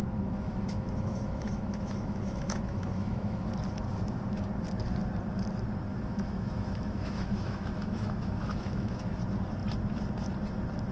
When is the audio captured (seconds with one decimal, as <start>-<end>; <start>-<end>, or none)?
3.5-5.9; 9.2-10.9